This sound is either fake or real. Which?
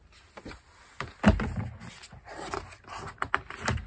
real